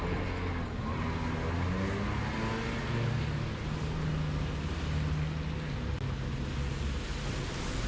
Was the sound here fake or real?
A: real